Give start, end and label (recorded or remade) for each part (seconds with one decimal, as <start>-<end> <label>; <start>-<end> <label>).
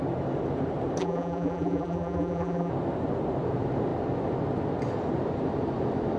0.0-1.0 recorded; 1.0-2.7 remade; 2.7-6.2 recorded